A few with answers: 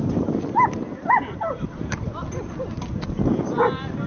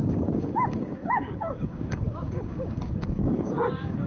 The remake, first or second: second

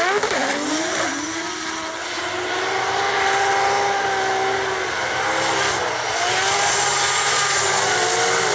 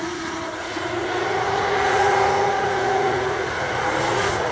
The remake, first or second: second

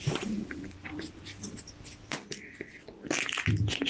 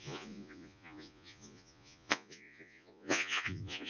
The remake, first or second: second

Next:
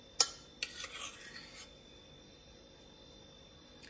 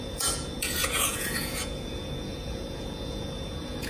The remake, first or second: second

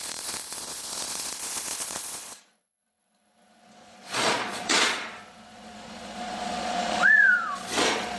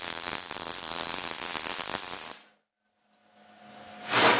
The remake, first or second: first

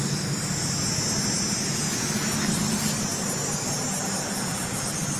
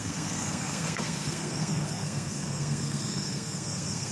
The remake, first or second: second